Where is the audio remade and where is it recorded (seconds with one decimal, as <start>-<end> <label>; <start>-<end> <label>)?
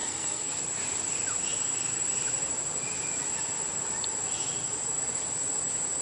0.0-0.6 remade; 0.6-6.0 recorded